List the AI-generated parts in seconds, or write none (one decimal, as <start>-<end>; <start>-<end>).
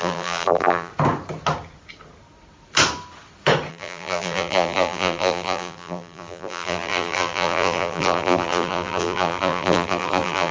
0.0-0.9; 3.7-10.5